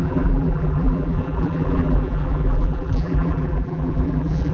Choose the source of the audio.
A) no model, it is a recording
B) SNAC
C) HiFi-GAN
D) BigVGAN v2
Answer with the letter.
D